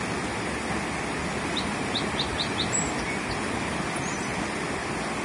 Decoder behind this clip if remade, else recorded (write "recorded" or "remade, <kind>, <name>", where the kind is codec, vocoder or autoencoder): recorded